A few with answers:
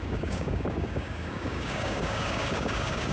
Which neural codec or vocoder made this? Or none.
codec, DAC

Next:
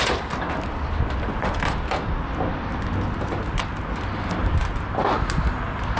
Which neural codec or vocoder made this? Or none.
none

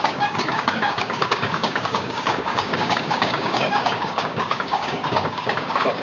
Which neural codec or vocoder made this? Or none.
codec, DAC